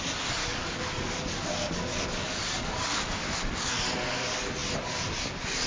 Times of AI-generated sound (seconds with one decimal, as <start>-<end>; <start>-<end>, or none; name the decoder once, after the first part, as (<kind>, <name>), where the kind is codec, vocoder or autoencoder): 0.4-3.7 (codec, DAC)